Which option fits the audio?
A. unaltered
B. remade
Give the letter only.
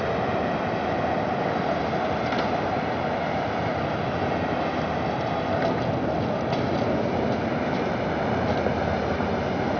A